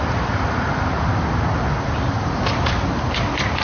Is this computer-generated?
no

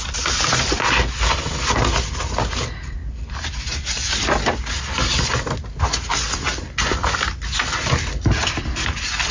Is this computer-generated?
no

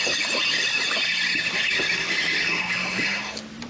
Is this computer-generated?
no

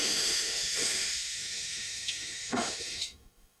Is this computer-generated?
yes